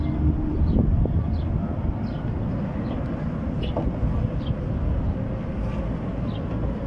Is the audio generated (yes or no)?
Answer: no